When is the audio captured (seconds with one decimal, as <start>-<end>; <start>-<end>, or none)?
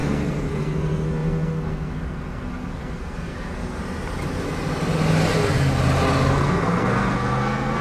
3.8-6.3